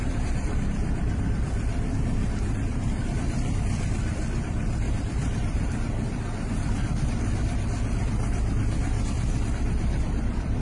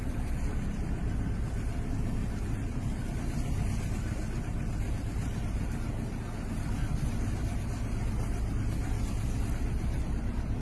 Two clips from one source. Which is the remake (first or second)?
first